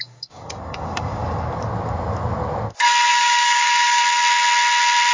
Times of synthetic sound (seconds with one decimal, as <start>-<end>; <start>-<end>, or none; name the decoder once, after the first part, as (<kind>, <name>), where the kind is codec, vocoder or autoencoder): 0.0-1.2 (codec, DAC); 3.1-4.0